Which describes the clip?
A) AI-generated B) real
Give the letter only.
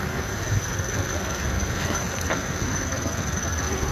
A